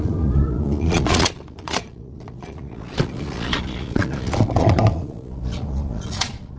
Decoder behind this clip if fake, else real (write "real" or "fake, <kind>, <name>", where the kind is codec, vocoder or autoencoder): fake, vocoder, Vocos